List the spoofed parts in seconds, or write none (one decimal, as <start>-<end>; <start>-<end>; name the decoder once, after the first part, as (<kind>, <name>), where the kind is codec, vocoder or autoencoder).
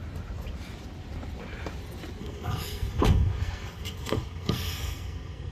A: 2.2-5.5 (codec, SNAC)